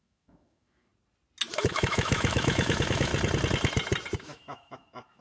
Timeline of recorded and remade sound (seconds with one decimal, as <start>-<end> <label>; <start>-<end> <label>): 0.0-0.9 remade; 0.9-1.6 recorded; 1.6-3.1 remade; 3.1-4.2 recorded; 4.2-5.2 remade